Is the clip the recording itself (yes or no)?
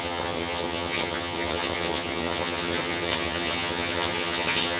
no